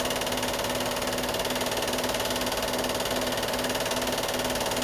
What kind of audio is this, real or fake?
real